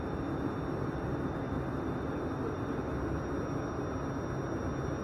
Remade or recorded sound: recorded